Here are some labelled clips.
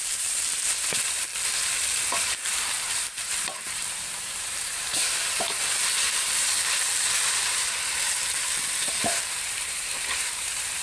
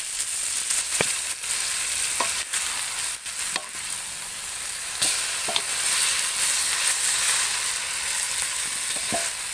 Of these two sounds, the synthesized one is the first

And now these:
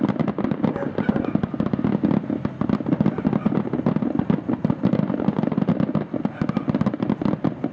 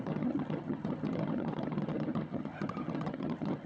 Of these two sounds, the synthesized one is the second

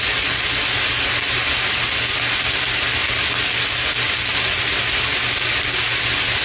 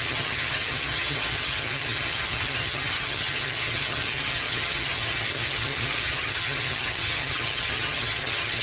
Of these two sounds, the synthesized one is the second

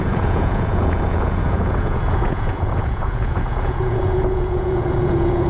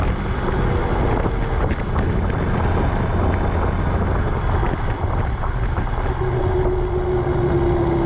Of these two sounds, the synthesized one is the first